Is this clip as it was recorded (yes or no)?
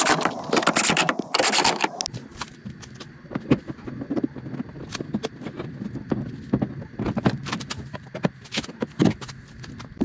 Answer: yes